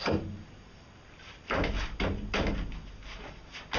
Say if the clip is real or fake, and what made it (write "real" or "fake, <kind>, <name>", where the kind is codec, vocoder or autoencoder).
real